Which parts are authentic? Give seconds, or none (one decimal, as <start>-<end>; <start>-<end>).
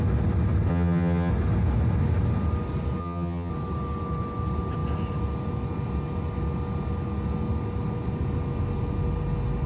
0.0-0.7; 1.3-3.0; 3.5-9.7